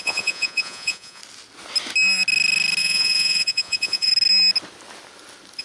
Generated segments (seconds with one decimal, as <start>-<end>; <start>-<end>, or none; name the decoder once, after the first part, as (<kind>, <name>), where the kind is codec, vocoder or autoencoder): 0.0-1.2 (vocoder, Vocos); 2.8-4.1